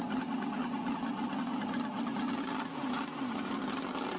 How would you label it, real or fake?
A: real